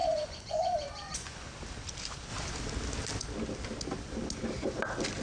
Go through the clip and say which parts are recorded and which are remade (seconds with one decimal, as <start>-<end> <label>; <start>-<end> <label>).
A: 0.0-1.5 remade; 1.5-5.2 recorded